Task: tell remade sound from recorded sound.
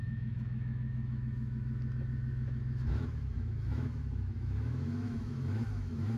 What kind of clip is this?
remade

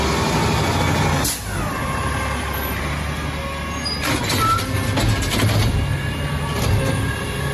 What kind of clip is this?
recorded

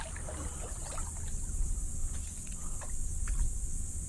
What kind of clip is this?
recorded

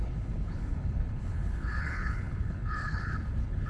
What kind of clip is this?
remade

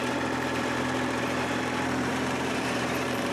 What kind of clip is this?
remade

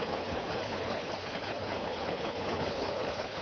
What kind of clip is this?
remade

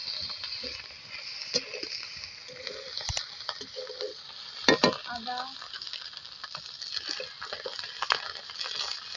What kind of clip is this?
recorded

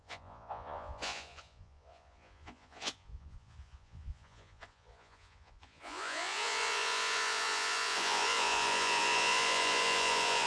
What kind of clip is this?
remade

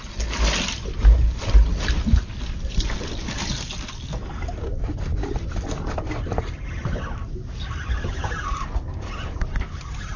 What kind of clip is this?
recorded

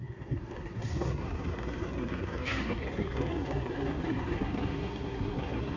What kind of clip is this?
remade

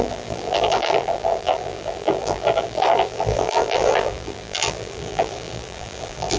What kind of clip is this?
remade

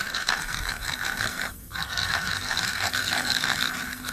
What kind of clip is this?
remade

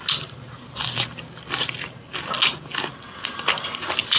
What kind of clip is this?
recorded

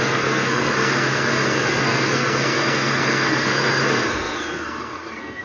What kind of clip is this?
remade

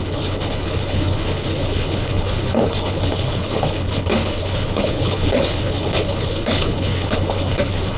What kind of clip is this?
remade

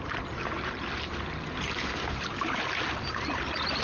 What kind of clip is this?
recorded